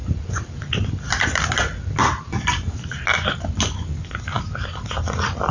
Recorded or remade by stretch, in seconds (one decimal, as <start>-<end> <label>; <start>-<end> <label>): 0.0-5.5 recorded